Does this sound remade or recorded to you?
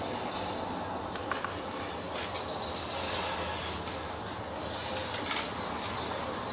recorded